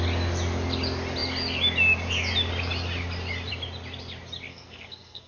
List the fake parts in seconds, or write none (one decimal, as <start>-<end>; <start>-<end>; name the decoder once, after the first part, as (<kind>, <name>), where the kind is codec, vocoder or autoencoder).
4.5-5.3 (codec, SNAC)